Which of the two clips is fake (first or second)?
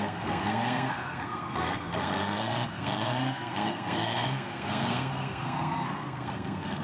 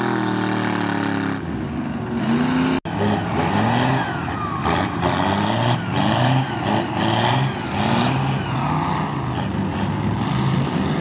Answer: first